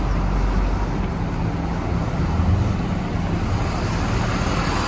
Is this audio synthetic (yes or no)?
no